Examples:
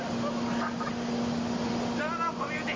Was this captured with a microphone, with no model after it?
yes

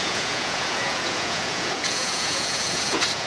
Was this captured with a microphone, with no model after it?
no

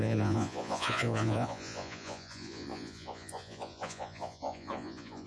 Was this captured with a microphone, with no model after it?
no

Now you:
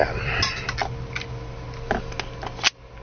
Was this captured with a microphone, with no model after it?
yes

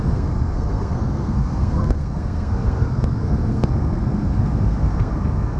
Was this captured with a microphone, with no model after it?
no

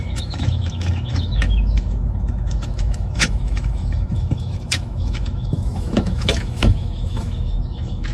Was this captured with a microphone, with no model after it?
no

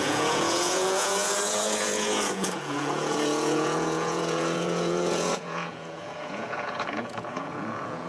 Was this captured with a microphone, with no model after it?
no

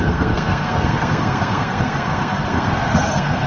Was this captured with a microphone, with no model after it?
no